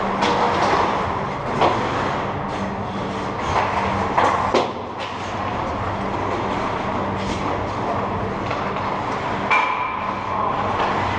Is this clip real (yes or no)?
yes